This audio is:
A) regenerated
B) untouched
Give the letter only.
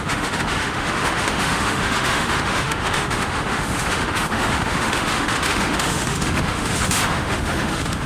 A